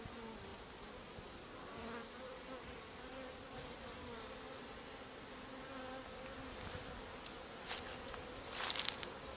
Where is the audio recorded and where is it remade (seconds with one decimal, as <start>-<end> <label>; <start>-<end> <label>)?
0.0-9.4 recorded